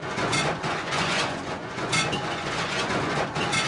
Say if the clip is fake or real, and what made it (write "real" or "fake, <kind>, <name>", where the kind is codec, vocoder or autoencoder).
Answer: fake, vocoder, Vocos